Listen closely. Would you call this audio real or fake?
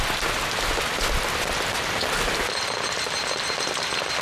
real